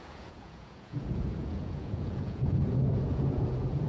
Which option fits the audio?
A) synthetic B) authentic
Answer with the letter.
A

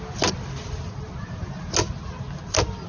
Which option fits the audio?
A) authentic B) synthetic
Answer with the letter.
A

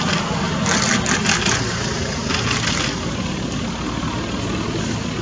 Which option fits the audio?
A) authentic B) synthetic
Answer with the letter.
A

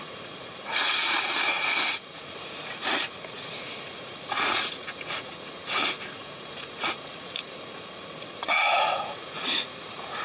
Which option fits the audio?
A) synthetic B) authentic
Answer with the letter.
A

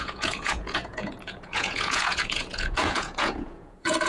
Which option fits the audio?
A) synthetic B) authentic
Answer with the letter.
A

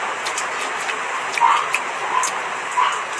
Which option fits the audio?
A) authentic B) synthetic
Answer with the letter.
A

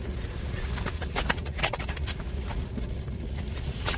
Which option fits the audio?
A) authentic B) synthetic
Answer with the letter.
B